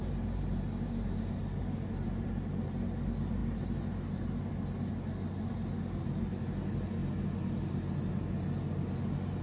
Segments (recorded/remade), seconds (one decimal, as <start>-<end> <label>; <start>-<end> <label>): 0.0-9.4 recorded